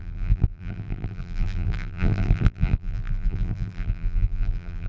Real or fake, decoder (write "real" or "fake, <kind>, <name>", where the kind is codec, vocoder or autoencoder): fake, vocoder, BigVGAN v2